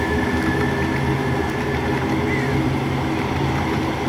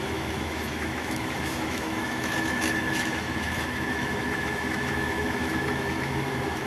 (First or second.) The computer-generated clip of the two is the second